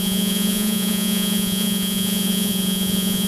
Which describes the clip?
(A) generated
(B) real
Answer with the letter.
A